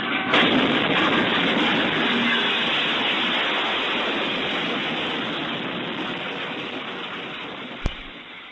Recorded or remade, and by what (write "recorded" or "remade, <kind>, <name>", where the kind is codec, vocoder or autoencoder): recorded